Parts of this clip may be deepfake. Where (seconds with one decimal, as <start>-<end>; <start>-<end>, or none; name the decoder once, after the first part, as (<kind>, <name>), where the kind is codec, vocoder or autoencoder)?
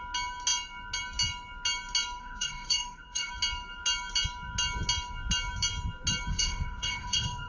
2.2-3.3 (codec, DAC); 6.3-7.5